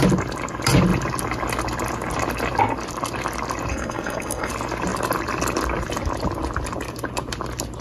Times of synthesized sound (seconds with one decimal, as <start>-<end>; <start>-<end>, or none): 3.7-4.5